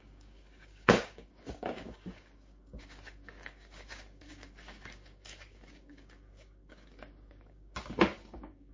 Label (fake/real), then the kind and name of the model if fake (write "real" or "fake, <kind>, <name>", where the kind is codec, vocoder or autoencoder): fake, codec, DAC